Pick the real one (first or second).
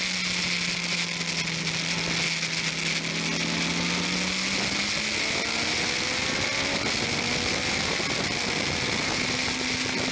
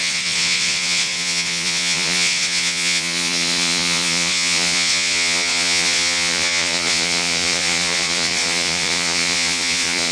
first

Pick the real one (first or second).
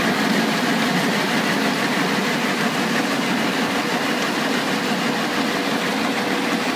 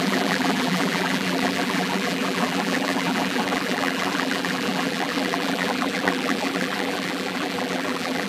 first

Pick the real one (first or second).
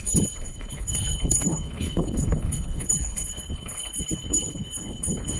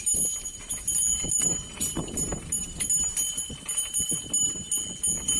second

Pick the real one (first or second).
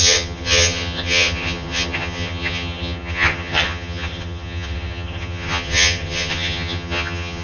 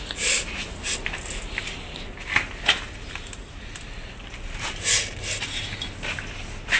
second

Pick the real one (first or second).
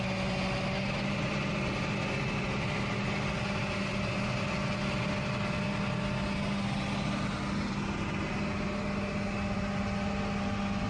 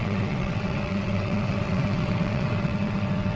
first